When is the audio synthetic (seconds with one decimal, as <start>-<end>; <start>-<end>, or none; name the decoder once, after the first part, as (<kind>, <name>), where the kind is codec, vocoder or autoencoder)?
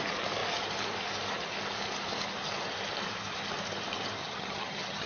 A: 4.2-5.1 (vocoder, HiFi-GAN)